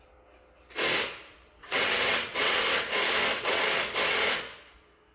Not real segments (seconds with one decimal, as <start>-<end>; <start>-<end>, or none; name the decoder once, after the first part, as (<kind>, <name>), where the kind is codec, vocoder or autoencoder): 1.6-2.6 (vocoder, WaveNeXt); 3.3-3.8